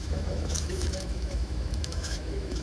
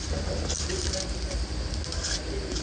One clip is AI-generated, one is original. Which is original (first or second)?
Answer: second